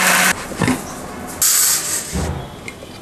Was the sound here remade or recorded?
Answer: recorded